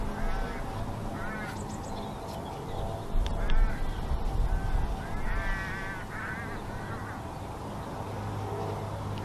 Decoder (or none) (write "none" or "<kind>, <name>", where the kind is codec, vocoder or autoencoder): none